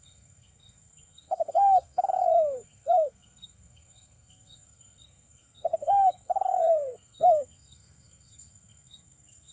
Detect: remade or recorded remade